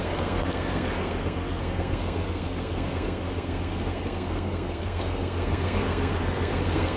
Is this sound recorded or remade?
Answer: remade